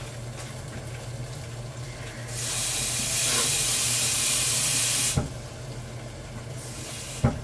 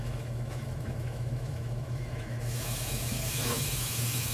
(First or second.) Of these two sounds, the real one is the first